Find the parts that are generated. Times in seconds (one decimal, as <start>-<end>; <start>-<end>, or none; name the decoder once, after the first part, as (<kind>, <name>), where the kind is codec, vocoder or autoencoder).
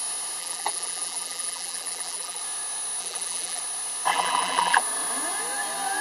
0.4-2.4 (vocoder, BigVGAN v2); 3.0-3.6; 4.1-4.8